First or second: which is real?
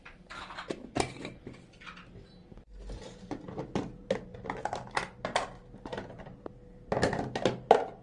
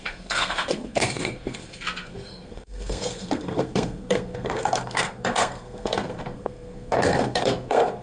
first